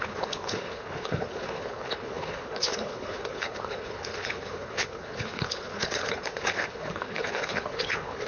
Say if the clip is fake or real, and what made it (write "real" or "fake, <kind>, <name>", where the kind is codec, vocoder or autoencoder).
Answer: fake, codec, HILCodec